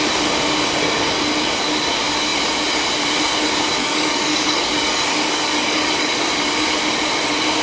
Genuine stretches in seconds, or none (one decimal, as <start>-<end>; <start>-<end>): 0.0-3.8; 6.3-7.6